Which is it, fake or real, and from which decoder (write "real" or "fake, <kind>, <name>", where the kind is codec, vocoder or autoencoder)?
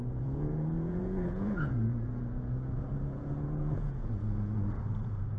fake, vocoder, Vocos